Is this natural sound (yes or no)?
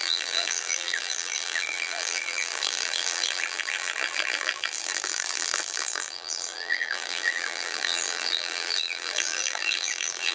no